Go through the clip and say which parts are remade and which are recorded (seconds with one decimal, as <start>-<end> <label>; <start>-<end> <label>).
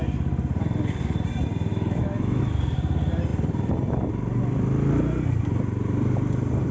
0.0-1.7 recorded; 1.7-2.4 remade; 2.4-6.7 recorded